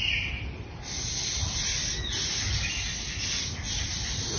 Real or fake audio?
real